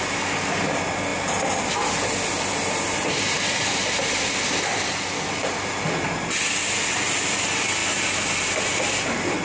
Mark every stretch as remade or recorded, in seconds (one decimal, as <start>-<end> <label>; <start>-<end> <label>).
0.0-1.1 recorded; 1.1-5.8 remade; 5.8-7.8 recorded; 7.8-8.4 remade; 8.4-9.4 recorded